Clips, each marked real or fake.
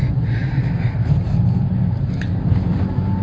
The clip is real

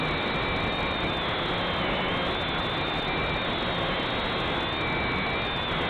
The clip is real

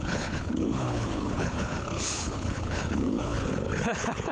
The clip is fake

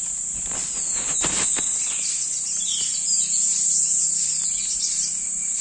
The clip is real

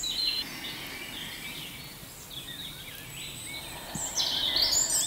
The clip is real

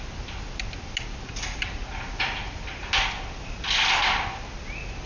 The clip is real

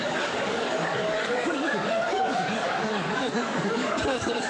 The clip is fake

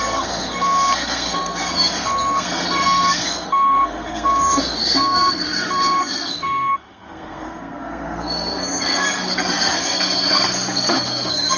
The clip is fake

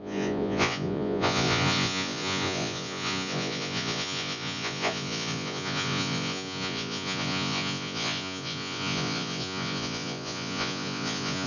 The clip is fake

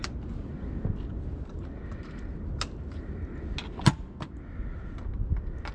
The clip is real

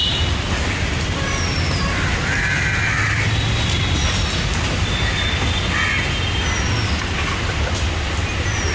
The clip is real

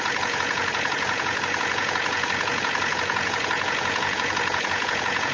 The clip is fake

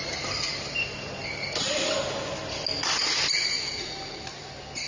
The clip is real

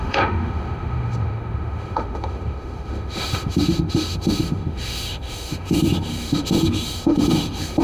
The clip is fake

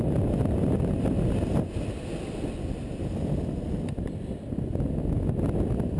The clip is real